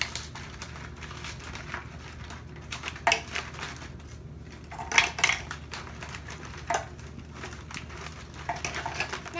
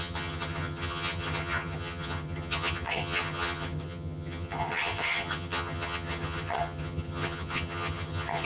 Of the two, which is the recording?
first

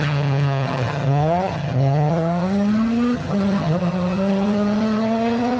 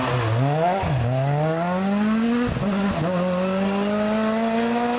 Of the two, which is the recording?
second